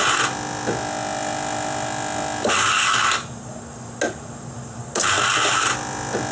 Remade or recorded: recorded